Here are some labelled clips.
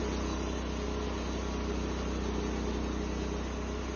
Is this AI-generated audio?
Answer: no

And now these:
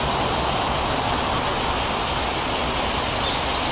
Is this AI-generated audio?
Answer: no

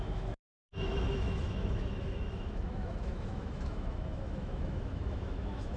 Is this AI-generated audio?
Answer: yes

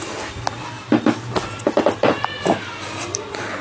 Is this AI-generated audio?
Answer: no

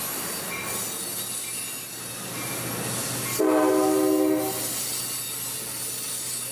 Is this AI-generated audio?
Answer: no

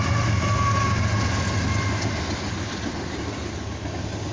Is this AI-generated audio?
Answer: no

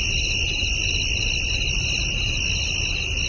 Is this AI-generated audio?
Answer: no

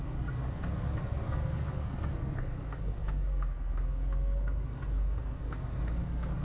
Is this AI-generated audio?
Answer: yes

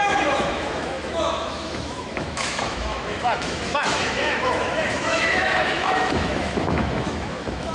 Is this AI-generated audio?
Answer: yes